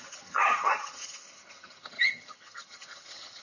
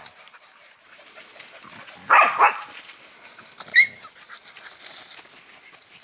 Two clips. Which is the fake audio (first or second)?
first